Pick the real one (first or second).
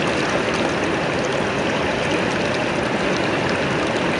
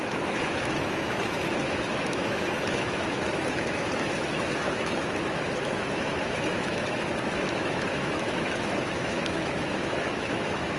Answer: first